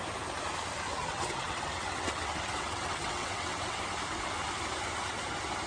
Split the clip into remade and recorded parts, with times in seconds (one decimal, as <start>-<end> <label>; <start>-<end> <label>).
0.0-1.0 recorded; 1.0-3.8 remade; 3.8-5.7 recorded